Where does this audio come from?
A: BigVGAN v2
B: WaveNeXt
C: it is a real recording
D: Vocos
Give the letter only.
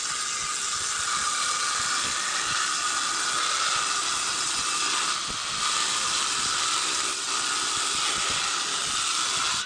C